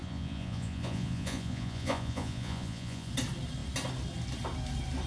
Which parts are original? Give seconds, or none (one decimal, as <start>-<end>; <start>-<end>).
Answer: 3.1-5.1